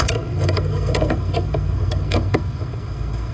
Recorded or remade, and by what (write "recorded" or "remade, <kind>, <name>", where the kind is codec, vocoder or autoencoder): remade, codec, SNAC